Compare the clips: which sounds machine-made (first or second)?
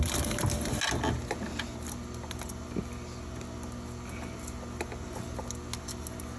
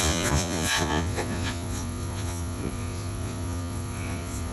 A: second